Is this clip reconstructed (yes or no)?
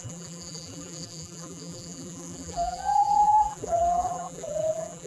yes